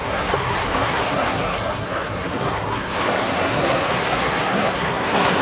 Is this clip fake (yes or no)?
yes